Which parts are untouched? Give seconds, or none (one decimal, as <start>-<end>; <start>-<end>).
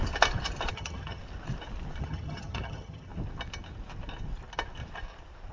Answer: 0.0-0.7; 1.2-2.0; 3.1-5.5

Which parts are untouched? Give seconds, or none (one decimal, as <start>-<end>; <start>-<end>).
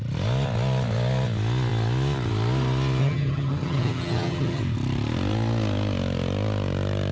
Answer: 0.0-3.0; 4.6-7.1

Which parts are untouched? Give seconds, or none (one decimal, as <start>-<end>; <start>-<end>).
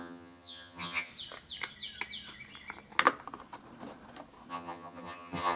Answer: 1.1-4.5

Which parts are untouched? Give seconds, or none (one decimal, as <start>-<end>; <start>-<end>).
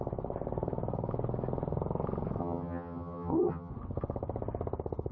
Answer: 0.0-2.4; 3.7-5.1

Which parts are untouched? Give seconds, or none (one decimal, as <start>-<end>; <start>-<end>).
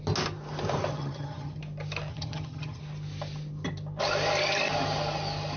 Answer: 0.0-0.9; 1.6-2.1; 2.8-5.6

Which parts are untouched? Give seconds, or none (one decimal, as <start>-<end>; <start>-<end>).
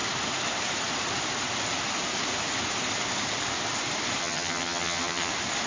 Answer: 0.0-4.2; 5.3-5.7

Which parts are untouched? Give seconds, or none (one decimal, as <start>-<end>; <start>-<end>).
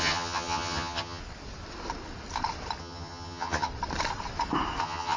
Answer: 1.2-2.8; 3.7-4.8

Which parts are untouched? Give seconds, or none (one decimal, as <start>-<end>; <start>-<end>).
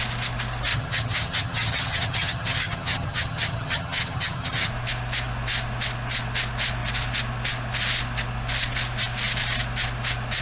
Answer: 0.0-0.7; 4.7-10.4